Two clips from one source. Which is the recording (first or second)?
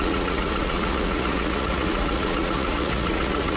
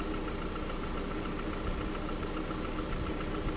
second